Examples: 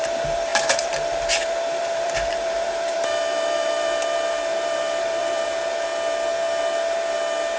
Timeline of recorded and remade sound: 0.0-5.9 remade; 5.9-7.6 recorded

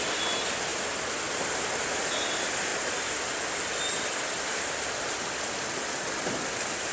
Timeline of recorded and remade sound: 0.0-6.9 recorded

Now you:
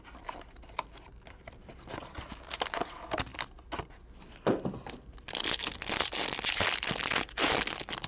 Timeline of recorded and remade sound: 0.0-8.1 recorded

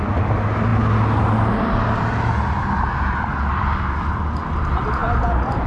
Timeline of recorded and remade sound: 0.0-5.7 recorded

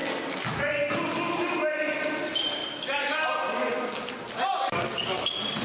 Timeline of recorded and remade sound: 0.0-5.6 recorded